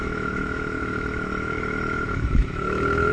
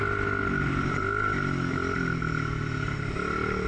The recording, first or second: second